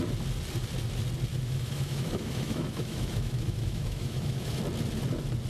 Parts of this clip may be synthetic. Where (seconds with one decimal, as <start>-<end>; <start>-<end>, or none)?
1.3-4.6